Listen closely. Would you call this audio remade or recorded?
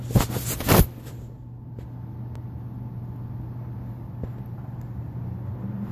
recorded